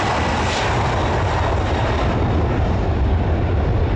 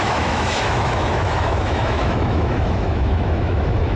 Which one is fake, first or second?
second